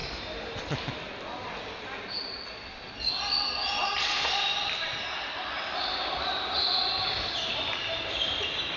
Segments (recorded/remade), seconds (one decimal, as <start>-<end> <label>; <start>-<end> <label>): 0.0-8.8 recorded